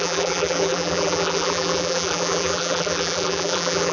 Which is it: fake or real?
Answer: fake